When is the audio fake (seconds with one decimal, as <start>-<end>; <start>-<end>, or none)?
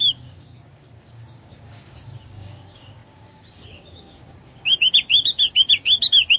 0.0-6.4